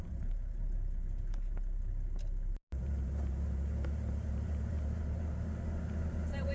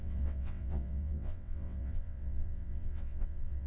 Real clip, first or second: first